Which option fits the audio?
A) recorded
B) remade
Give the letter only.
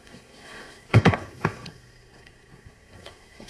B